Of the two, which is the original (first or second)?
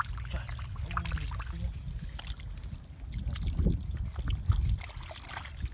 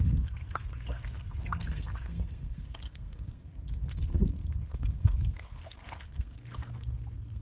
first